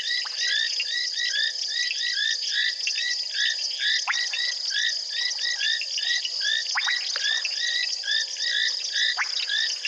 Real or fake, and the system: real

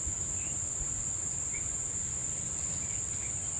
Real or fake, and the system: real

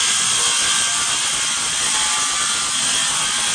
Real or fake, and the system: real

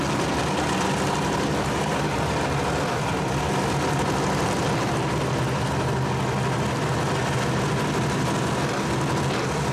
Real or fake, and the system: real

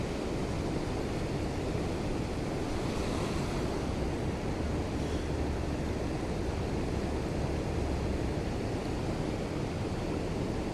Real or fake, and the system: real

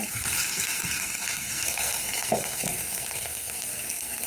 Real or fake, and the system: fake, codec, SNAC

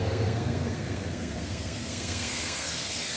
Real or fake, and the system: fake, codec, SNAC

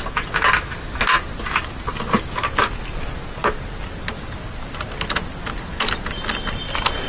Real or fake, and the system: real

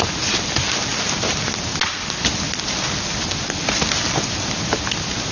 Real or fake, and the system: real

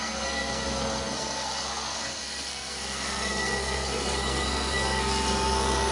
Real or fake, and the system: fake, codec, SNAC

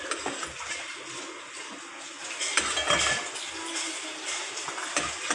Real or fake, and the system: real